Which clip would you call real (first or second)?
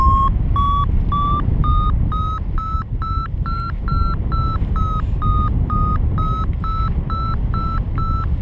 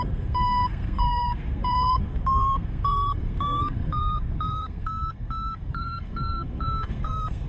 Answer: first